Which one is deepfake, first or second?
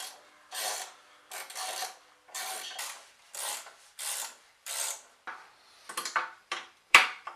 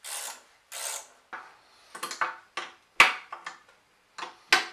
first